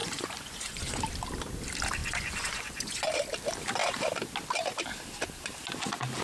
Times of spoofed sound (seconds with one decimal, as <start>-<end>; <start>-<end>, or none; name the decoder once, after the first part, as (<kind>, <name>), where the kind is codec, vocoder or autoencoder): 0.0-1.0 (vocoder, Vocos); 2.0-3.0